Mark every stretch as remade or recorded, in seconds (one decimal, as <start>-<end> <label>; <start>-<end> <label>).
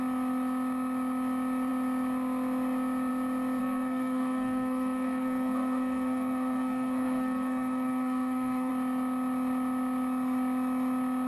0.0-3.6 recorded; 3.6-8.7 remade; 8.7-11.3 recorded